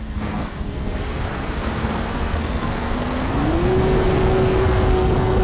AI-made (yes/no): yes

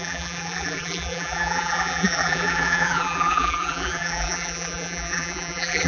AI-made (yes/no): yes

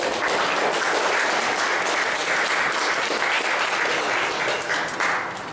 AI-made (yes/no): no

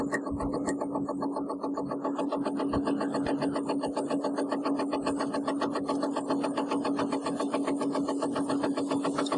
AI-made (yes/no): no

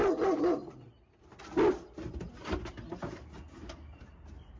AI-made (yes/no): no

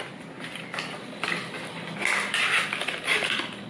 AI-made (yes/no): no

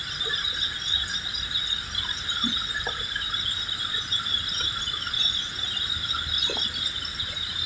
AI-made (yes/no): no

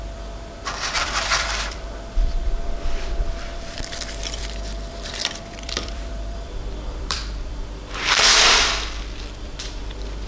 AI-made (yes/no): yes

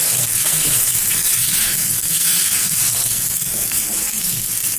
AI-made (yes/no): yes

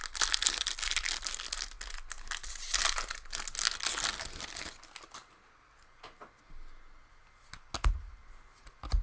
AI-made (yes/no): no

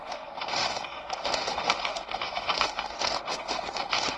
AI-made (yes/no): yes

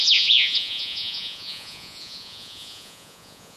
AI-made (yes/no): yes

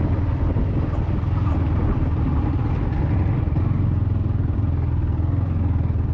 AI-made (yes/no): no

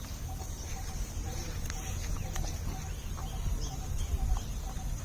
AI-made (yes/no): no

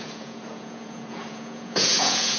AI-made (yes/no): yes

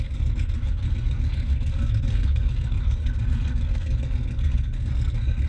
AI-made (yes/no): yes